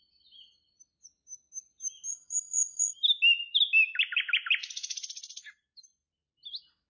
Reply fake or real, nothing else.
real